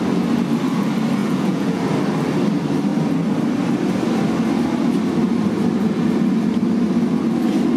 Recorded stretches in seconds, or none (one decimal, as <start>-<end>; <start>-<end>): 0.0-1.2; 1.8-7.8